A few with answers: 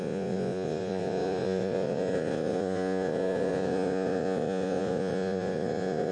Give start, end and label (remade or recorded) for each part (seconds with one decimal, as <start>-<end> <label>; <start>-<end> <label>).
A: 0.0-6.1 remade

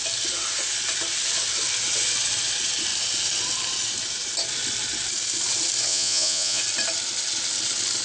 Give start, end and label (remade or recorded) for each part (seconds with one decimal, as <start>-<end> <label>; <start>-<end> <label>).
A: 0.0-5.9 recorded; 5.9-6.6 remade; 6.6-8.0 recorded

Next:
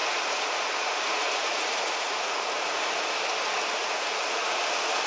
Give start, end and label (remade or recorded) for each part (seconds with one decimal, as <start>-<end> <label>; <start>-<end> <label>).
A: 0.0-2.8 remade; 2.8-3.8 recorded; 3.8-4.6 remade; 4.6-5.1 recorded